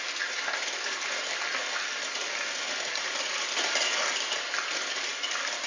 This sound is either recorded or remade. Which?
recorded